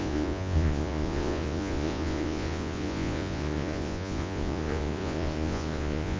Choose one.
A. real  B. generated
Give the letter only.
B